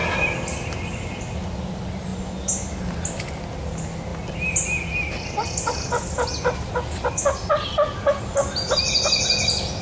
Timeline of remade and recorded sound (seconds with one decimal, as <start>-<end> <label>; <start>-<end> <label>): 0.0-0.9 remade; 0.9-9.8 recorded